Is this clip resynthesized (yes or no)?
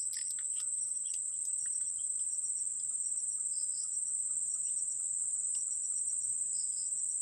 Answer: no